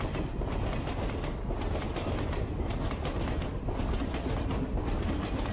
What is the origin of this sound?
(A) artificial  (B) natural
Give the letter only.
B